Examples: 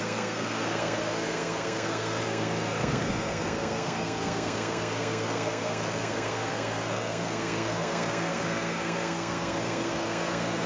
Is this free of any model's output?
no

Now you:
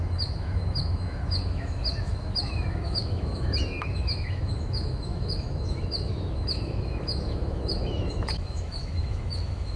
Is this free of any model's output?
no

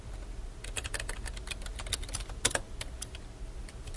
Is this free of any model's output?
yes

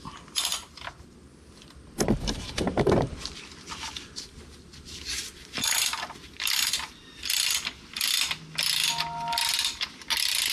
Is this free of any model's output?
yes